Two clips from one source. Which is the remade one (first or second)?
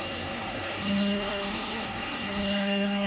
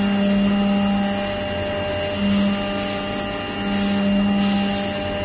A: first